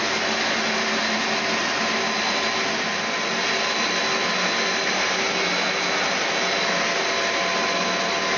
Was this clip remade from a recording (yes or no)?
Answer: no